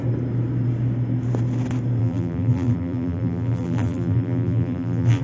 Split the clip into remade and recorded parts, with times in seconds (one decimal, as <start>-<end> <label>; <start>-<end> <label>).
0.0-2.0 recorded; 2.0-5.2 remade